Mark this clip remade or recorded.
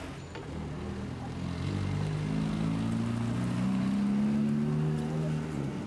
recorded